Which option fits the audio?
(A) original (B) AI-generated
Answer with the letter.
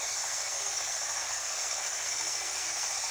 B